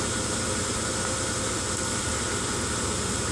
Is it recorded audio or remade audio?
recorded